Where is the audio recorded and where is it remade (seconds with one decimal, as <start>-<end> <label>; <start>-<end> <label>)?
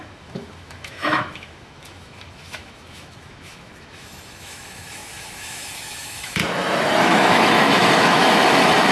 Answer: 0.0-6.4 remade; 6.4-7.0 recorded; 7.0-8.9 remade